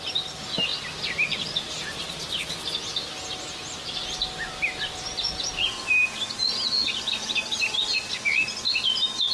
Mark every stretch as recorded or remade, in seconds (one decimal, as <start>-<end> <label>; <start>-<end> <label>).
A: 0.0-9.3 recorded